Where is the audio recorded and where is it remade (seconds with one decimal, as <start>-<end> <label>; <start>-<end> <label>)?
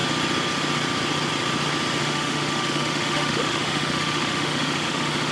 0.0-2.0 recorded; 2.0-5.3 remade